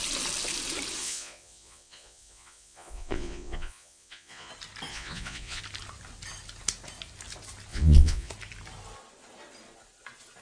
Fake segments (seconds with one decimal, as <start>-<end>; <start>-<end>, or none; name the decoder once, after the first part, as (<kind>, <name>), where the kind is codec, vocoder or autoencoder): 1.0-4.5 (vocoder, Vocos); 4.9-5.6; 7.7-8.3